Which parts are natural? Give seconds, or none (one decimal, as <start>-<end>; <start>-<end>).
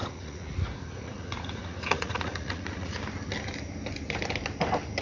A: 3.0-5.0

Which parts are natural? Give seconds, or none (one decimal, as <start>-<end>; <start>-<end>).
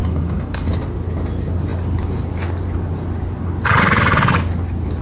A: 0.7-5.0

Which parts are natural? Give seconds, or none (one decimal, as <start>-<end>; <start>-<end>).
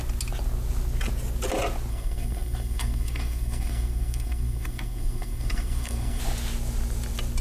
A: 0.0-1.9; 6.2-7.4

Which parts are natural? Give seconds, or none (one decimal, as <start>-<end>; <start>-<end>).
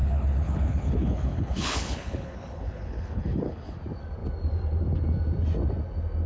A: 3.8-6.3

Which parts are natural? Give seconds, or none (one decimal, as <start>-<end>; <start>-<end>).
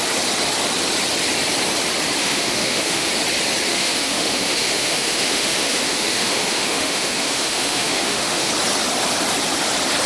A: 0.0-2.2; 3.1-3.7; 8.5-10.1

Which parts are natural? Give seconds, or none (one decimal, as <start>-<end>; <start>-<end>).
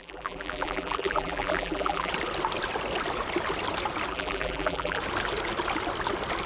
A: 2.1-4.1; 5.0-6.5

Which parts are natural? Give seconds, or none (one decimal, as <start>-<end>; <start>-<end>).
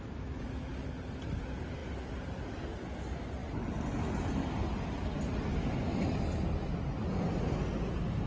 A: 0.0-0.8; 1.4-8.3